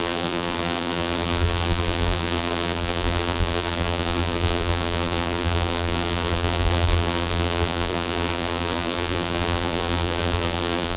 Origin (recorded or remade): remade